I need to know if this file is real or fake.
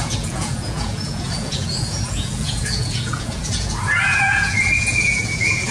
fake